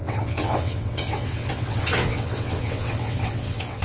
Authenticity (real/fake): fake